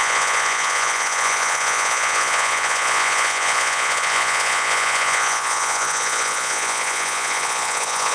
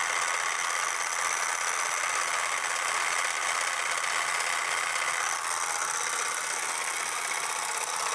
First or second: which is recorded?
second